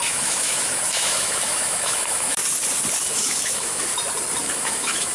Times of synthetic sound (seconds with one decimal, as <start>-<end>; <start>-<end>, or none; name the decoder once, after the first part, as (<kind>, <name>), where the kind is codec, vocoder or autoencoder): 0.0-2.4 (autoencoder, DAC-VAE); 3.1-3.9; 4.4-5.1